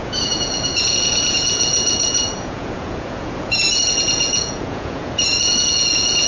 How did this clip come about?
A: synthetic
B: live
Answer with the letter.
A